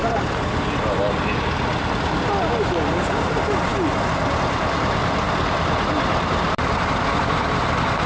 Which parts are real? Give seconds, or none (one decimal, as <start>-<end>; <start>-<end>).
0.0-3.7; 7.0-8.1